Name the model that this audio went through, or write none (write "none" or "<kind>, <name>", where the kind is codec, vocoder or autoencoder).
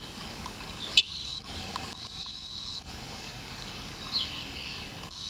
codec, DAC